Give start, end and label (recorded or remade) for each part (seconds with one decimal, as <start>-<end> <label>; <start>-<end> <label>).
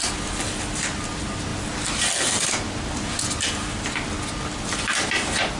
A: 0.0-5.6 recorded